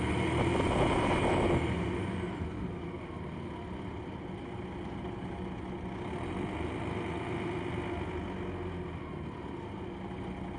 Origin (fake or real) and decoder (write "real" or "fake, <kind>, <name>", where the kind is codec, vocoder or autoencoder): real